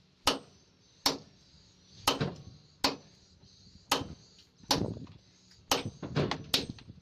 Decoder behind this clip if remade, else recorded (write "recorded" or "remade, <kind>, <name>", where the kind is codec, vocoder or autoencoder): recorded